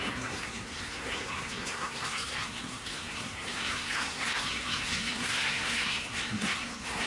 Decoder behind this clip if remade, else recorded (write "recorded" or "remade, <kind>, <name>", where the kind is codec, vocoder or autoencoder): remade, codec, SNAC